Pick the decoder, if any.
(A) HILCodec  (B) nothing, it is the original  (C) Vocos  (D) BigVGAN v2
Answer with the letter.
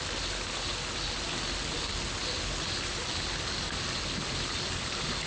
B